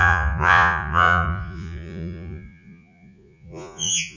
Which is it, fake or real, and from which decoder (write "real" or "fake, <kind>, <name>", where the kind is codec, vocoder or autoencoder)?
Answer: fake, vocoder, Vocos